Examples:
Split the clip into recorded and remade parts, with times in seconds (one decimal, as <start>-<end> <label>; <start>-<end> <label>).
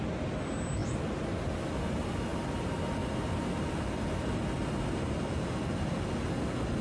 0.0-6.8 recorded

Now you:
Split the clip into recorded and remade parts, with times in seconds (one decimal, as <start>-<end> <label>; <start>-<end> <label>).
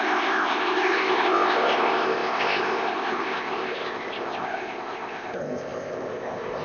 0.0-6.6 remade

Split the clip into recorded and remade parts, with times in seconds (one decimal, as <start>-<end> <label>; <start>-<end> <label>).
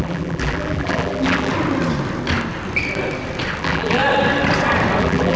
0.0-1.5 remade; 1.5-3.6 recorded; 3.6-4.0 remade; 4.0-5.0 recorded; 5.0-5.4 remade